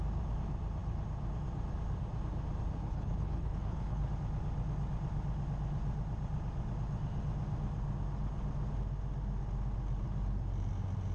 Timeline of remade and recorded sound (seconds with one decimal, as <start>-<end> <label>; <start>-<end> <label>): 0.0-2.8 recorded; 2.8-4.1 remade; 4.1-11.1 recorded